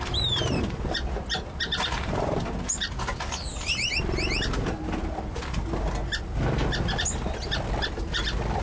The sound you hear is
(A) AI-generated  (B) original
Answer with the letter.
B